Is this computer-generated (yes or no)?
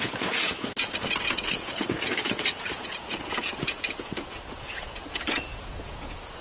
yes